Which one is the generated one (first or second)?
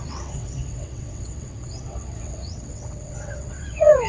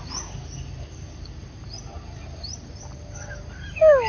first